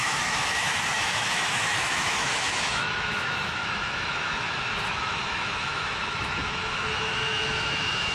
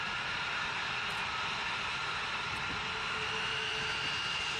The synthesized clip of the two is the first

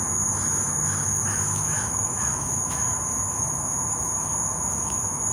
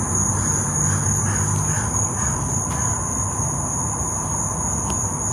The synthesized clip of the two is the first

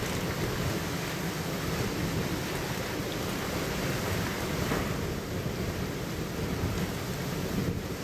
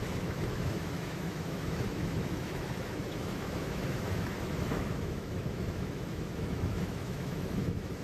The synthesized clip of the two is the second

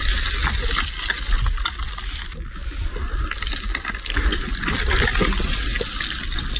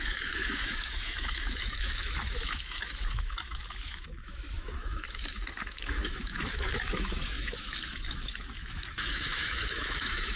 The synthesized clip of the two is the second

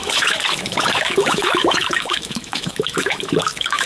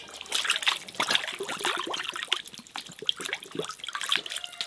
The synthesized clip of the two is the first